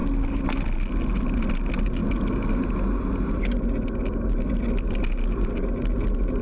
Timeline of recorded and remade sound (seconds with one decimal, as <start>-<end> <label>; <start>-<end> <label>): 0.0-6.4 recorded